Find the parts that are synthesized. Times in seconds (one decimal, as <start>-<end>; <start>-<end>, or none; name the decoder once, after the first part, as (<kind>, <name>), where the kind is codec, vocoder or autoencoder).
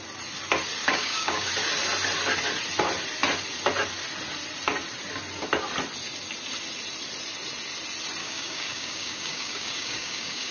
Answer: 0.8-1.5 (codec, DAC); 8.2-10.5